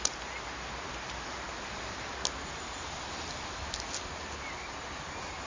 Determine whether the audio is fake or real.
real